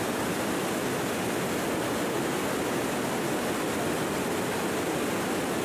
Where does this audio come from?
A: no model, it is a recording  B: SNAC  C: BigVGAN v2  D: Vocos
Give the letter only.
A